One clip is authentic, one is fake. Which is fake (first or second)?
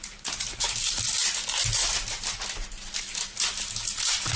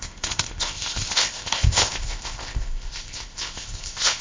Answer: second